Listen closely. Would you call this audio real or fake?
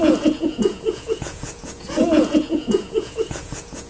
fake